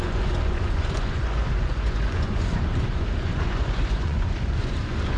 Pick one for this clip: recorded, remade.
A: remade